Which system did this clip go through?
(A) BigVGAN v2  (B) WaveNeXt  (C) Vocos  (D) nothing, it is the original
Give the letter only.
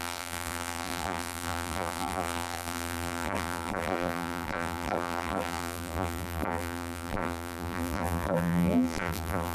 A